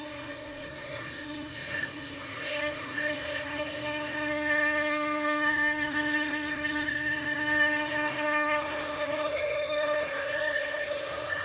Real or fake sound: fake